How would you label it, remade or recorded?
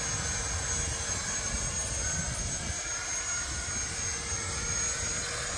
recorded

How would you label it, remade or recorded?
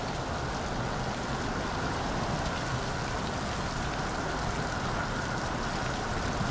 recorded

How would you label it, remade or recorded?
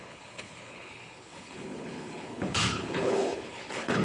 remade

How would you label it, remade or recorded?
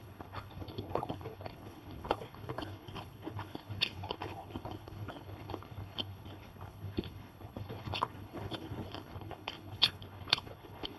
remade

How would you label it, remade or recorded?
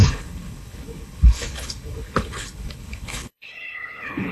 remade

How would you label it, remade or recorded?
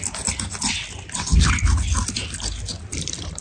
recorded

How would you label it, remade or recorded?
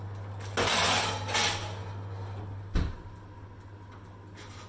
recorded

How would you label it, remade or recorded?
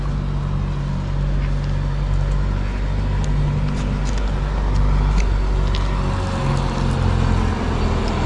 recorded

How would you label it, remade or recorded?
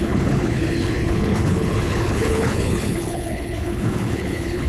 remade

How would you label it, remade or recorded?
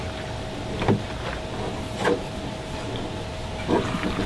recorded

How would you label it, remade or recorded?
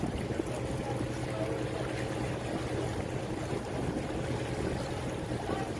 recorded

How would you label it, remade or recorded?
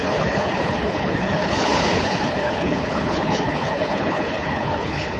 remade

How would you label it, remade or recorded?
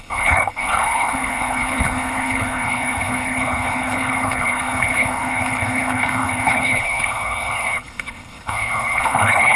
remade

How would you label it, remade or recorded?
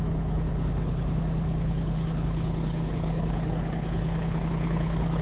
remade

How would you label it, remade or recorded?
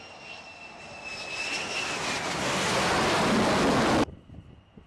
recorded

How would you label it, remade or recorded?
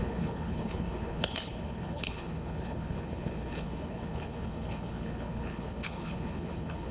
remade